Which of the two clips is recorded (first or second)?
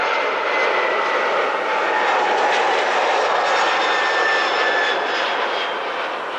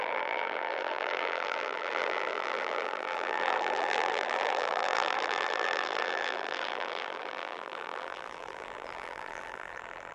first